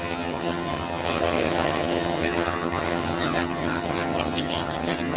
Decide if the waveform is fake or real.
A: fake